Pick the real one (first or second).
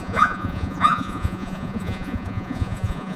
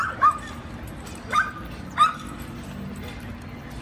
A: second